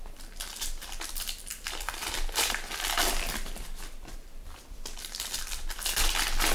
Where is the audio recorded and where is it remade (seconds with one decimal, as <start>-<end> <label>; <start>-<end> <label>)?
0.0-1.5 recorded; 1.5-5.4 remade; 5.4-6.5 recorded